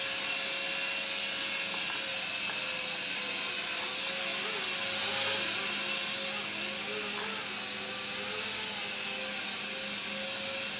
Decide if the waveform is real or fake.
real